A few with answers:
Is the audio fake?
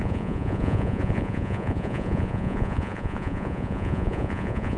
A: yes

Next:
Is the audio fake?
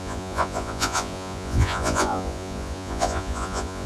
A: yes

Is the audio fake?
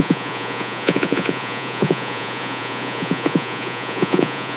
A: yes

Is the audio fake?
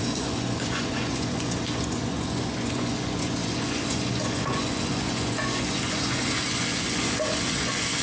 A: yes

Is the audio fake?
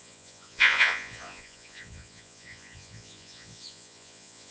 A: yes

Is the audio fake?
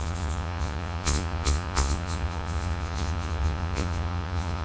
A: yes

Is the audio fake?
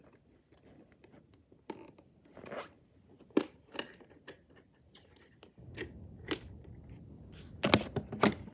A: no